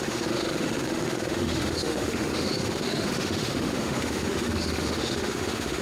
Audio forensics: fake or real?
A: fake